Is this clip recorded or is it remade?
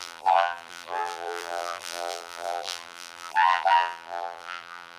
remade